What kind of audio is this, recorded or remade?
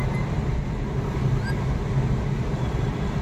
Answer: recorded